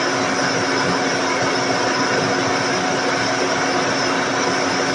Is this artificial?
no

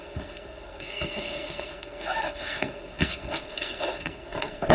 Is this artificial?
yes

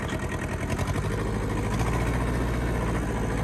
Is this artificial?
no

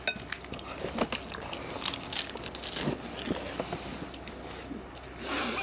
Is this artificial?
no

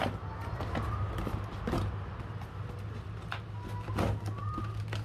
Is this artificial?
no